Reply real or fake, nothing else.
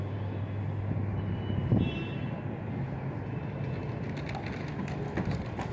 real